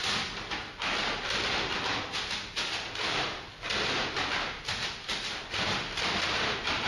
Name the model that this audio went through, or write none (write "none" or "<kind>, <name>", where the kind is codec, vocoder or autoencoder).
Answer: none